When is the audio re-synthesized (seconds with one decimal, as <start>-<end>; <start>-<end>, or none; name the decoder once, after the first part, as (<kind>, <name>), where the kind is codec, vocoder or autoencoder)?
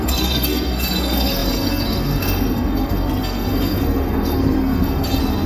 0.0-5.5 (codec, SNAC)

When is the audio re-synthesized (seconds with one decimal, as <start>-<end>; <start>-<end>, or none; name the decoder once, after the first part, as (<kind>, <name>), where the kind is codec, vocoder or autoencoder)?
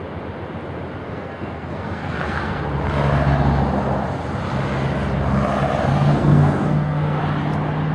1.0-2.6 (codec, SNAC); 5.9-7.2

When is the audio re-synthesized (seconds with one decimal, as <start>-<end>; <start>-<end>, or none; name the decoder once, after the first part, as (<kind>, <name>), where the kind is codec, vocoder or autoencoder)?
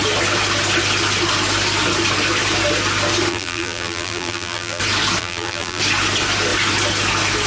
3.3-4.8 (vocoder, BigVGAN v2); 5.2-5.8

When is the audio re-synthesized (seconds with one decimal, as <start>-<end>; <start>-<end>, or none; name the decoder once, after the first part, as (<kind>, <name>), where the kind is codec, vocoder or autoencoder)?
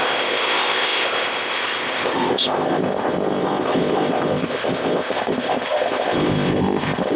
0.0-7.2 (codec, ZipCodec)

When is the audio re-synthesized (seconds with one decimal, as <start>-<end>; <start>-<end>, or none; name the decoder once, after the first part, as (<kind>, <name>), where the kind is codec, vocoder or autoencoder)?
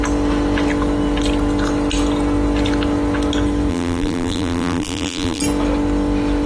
3.7-5.4 (vocoder, BigVGAN v2)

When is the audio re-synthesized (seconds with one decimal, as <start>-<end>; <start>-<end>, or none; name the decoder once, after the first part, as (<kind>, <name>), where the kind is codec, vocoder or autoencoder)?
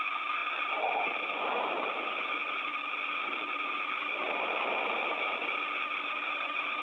none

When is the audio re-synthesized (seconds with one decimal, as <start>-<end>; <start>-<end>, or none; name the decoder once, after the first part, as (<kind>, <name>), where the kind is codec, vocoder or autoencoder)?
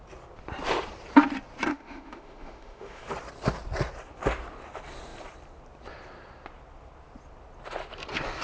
1.7-3.0 (autoencoder, DAC-VAE)